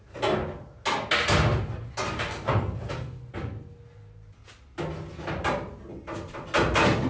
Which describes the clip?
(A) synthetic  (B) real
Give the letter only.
B